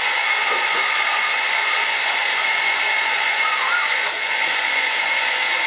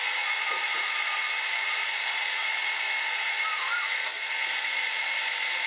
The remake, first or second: first